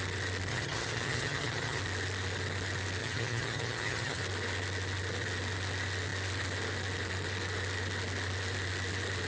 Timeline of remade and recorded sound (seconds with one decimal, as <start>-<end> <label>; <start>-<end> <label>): 0.0-0.5 recorded; 0.5-1.8 remade; 1.8-3.0 recorded; 3.0-4.2 remade; 4.2-9.3 recorded